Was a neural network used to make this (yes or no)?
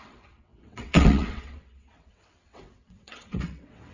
yes